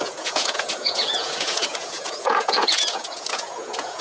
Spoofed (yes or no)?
yes